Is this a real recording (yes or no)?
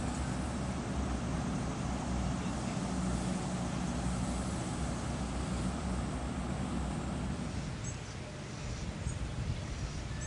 yes